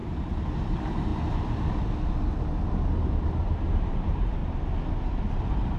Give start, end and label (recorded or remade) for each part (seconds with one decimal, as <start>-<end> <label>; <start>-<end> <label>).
0.0-0.6 recorded; 0.6-1.1 remade; 1.1-3.4 recorded; 3.4-4.4 remade; 4.4-5.8 recorded